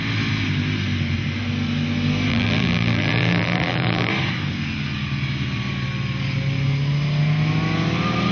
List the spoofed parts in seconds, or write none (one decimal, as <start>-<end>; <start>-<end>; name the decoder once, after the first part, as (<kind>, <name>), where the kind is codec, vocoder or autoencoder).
2.3-4.1 (vocoder, BigVGAN v2)